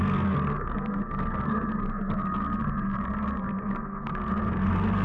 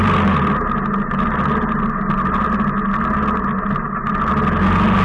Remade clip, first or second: first